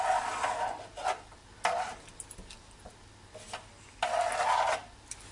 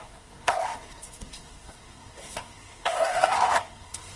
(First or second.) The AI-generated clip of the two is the second